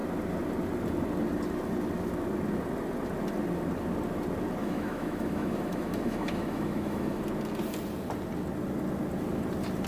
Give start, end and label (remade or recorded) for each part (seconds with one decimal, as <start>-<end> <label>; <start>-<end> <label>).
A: 0.0-4.6 recorded; 4.6-7.2 remade; 7.2-9.9 recorded